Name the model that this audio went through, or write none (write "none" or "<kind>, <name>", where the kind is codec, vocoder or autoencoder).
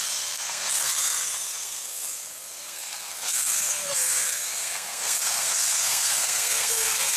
codec, SNAC